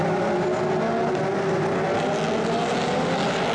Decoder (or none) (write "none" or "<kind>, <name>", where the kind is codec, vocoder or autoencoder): none